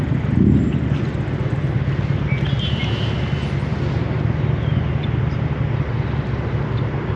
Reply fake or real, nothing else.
real